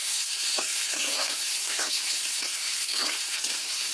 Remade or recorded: remade